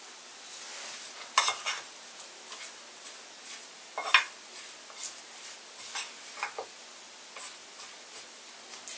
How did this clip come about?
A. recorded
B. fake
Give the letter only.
A